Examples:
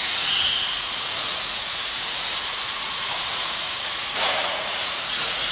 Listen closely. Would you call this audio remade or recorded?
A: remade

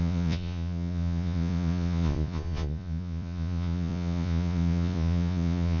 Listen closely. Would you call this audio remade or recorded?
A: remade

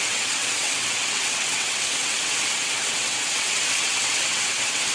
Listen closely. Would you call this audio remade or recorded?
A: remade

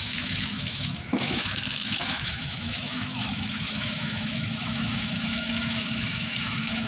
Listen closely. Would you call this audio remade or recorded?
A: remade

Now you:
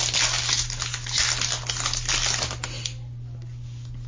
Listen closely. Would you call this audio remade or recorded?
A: recorded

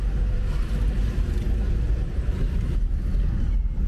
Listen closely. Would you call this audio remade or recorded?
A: recorded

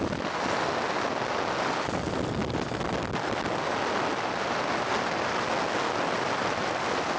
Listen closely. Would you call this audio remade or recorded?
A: recorded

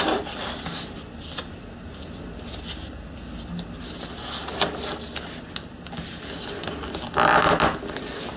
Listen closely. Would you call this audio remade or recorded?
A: recorded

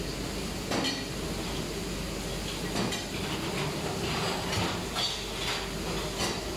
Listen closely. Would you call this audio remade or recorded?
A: recorded